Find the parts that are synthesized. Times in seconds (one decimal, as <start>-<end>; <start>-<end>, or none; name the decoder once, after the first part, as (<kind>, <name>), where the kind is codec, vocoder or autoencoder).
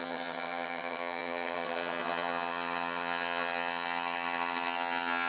0.0-5.3 (vocoder, HiFi-GAN)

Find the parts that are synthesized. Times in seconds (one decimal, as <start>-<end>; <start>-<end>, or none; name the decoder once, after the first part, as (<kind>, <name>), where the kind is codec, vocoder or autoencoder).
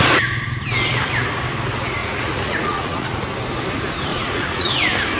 2.0-3.2 (vocoder, Vocos); 4.1-4.7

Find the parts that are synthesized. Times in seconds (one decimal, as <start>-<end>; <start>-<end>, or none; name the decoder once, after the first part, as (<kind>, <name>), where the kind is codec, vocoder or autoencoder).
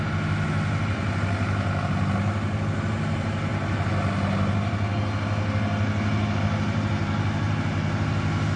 none